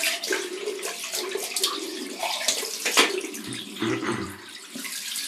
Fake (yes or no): yes